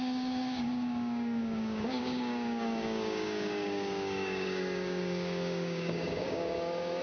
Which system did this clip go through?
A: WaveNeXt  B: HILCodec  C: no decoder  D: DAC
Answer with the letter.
D